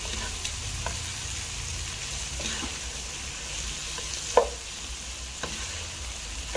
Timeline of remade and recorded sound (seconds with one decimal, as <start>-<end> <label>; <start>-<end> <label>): 0.0-6.6 recorded